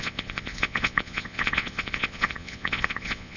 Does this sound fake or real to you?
fake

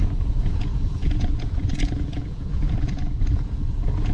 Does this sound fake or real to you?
fake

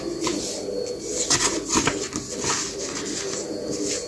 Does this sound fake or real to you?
real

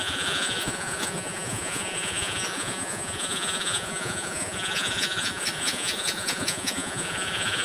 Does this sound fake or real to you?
fake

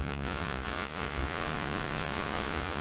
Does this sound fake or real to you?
fake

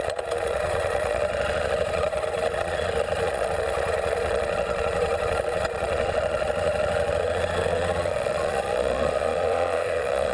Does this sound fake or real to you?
fake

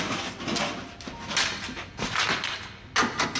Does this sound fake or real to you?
real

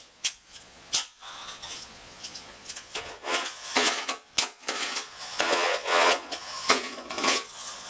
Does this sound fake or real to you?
fake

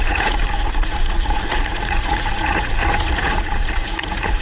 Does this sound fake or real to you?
fake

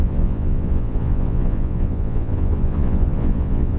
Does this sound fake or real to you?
fake